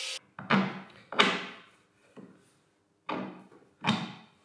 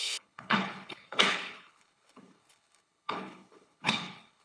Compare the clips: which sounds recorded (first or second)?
first